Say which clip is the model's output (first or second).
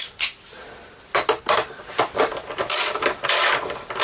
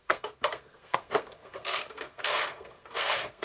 second